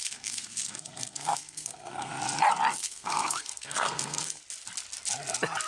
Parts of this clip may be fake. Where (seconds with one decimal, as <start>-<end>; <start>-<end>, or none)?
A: 0.0-2.1; 2.8-4.4

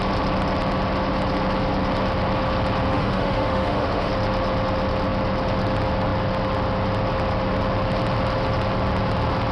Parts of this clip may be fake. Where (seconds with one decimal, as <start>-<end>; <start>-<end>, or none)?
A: 2.9-4.1

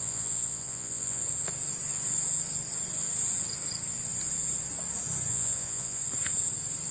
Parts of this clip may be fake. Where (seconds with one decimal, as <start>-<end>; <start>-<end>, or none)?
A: 0.0-1.2; 5.3-6.0

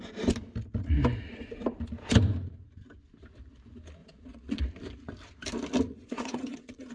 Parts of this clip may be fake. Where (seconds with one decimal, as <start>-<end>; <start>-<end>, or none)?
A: 4.0-4.6; 5.9-6.9